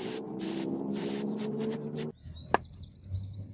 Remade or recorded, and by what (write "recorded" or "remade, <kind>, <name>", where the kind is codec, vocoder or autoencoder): recorded